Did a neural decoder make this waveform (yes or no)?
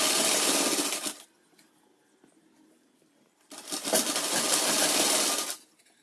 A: no